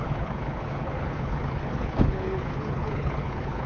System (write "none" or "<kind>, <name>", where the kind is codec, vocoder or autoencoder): codec, HILCodec